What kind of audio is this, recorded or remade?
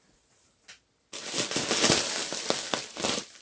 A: recorded